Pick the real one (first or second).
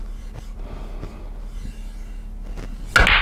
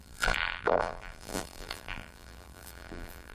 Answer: first